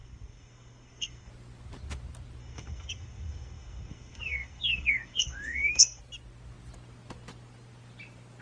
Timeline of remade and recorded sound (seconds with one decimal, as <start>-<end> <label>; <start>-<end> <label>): 0.0-1.3 remade; 1.3-2.4 recorded; 2.4-6.0 remade; 6.0-8.4 recorded